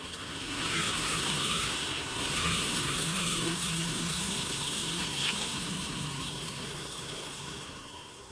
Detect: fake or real fake